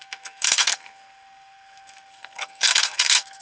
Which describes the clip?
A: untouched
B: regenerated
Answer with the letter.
B